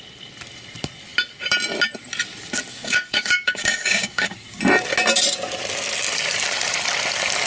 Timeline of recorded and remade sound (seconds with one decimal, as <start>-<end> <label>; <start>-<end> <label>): 0.0-2.7 recorded; 2.7-4.6 remade; 4.6-7.5 recorded